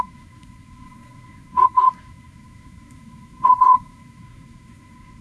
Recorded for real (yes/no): no